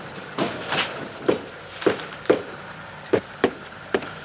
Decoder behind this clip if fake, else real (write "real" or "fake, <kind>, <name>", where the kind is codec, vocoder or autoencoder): fake, vocoder, BigVGAN v2